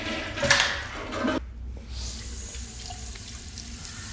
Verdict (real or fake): real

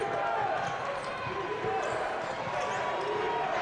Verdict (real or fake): real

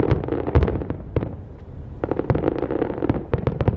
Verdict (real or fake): real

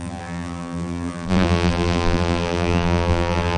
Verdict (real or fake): fake